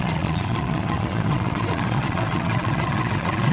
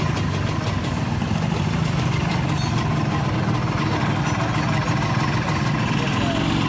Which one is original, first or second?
second